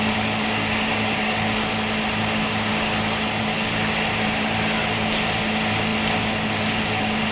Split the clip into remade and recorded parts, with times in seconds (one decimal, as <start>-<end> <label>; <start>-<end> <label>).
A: 0.0-7.3 recorded